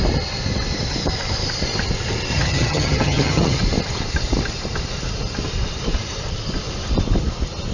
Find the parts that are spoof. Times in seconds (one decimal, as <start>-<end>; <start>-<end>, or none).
2.3-3.6